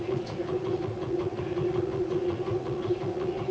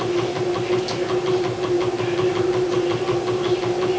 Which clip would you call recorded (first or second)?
second